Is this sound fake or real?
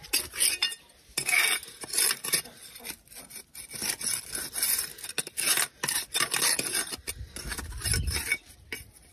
real